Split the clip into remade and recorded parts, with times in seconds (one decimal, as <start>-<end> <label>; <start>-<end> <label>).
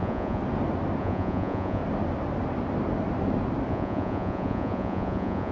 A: 0.0-0.4 remade; 0.4-1.0 recorded; 1.0-1.8 remade; 1.8-3.7 recorded; 3.7-5.5 remade